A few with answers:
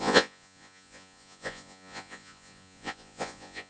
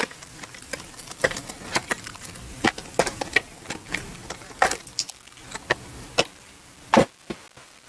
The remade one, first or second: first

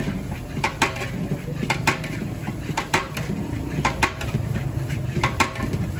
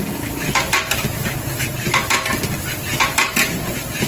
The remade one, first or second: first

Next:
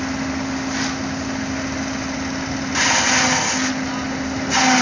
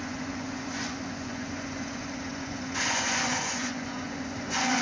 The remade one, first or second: second